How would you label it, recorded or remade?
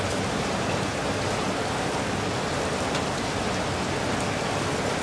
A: recorded